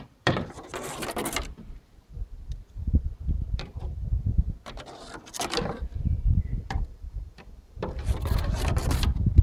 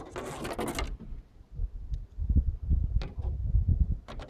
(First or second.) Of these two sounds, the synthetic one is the first